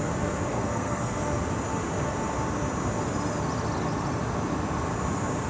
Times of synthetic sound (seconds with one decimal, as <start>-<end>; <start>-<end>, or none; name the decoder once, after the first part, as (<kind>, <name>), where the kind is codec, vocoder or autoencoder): 0.5-1.2 (codec, SNAC)